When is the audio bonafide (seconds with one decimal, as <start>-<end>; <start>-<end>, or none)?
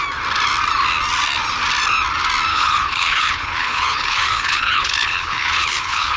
0.0-2.5